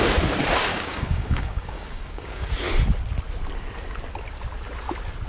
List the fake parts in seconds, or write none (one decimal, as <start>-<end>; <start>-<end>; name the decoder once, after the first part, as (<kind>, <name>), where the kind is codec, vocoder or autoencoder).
0.7-2.5 (codec, DAC)